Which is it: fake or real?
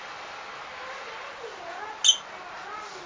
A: real